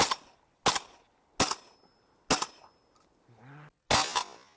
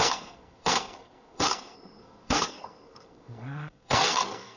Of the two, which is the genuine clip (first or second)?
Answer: first